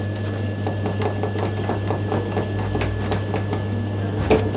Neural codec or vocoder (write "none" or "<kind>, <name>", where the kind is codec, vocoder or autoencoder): none